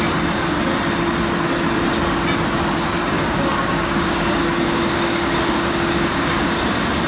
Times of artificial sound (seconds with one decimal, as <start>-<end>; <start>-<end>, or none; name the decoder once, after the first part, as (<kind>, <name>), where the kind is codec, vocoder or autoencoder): 3.0-6.6 (codec, DAC)